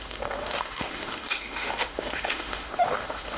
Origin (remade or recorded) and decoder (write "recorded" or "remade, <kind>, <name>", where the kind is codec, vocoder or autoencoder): remade, autoencoder, DAC-VAE